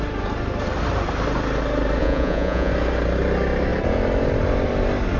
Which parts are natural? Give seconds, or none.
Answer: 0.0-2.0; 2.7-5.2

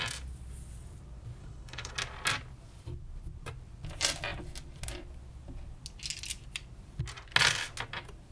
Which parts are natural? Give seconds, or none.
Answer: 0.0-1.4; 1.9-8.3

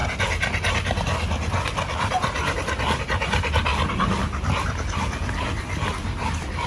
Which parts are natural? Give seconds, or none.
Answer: 0.0-3.0

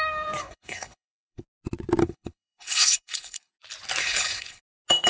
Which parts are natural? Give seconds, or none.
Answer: 0.0-0.4; 1.4-2.0; 3.5-4.0; 4.6-5.1